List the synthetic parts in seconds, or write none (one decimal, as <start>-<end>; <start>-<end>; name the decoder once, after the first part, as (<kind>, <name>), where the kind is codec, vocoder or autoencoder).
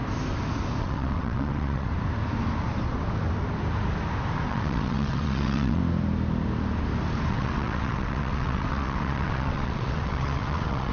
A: 0.8-1.9 (vocoder, WaveNeXt); 4.5-5.8; 7.3-10.9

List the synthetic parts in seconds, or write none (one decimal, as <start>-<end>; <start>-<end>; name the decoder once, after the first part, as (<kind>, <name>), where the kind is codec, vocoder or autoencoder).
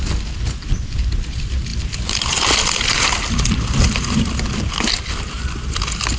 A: none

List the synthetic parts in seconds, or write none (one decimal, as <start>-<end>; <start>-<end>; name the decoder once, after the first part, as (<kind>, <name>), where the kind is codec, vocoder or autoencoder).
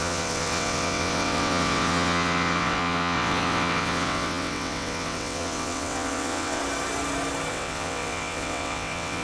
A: 0.0-6.6 (vocoder, WaveNeXt); 7.5-9.2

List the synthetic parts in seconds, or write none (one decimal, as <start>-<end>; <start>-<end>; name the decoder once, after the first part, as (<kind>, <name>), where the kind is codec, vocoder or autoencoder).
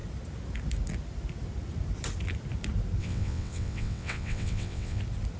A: 3.0-5.0 (vocoder, WaveNeXt)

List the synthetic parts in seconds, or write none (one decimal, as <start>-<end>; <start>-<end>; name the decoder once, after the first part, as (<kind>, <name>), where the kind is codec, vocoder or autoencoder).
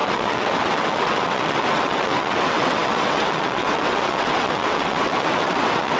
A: 0.0-6.0 (vocoder, WaveNeXt)